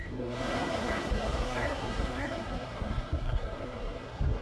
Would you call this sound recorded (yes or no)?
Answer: no